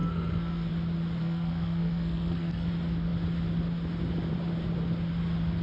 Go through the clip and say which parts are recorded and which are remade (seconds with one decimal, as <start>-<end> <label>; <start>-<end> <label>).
0.0-0.7 remade; 0.7-1.2 recorded; 1.2-2.7 remade; 2.7-5.6 recorded